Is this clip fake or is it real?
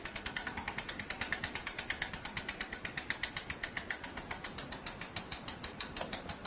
real